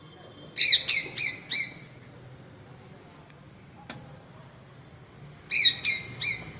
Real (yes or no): yes